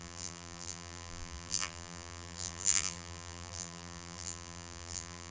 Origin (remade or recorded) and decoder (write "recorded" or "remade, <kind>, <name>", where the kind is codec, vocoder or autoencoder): remade, vocoder, BigVGAN v2